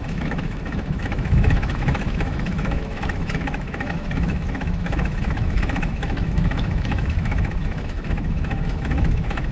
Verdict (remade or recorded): remade